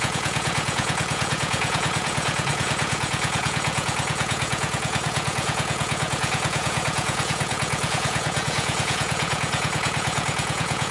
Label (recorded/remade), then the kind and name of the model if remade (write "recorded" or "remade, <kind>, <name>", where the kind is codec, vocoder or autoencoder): remade, vocoder, Vocos